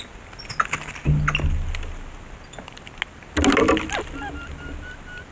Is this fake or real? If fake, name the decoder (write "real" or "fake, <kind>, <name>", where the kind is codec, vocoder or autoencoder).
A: real